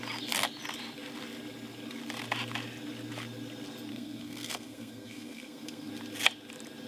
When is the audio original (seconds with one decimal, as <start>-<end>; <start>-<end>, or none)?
0.0-3.9; 5.9-6.9